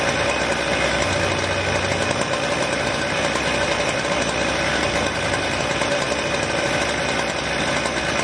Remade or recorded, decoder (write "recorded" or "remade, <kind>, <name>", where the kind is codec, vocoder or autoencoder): recorded